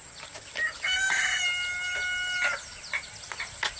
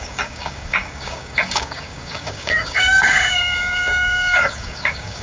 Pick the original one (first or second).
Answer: first